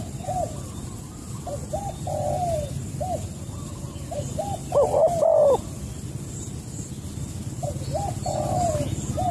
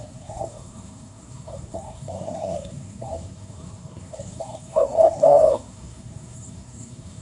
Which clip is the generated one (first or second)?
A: second